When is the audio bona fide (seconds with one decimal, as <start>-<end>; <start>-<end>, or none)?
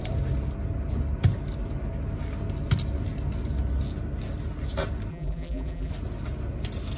0.0-5.1; 5.9-7.0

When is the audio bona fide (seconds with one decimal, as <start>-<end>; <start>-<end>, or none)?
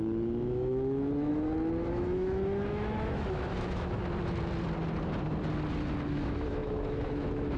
1.3-1.9; 4.0-6.0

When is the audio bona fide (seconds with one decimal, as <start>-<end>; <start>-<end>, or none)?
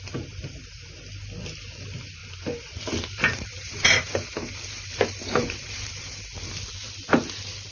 0.0-2.2; 6.2-7.7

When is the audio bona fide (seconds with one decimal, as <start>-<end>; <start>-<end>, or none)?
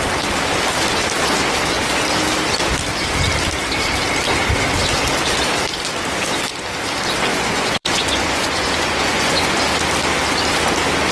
0.0-7.3; 9.6-11.1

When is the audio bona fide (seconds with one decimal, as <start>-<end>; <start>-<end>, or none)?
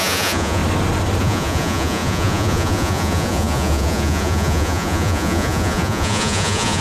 0.6-1.2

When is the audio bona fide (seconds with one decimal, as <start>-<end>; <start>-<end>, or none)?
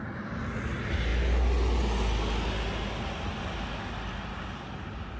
0.0-5.2